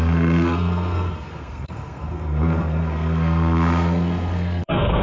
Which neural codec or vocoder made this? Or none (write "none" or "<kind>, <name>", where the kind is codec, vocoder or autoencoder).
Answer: codec, SNAC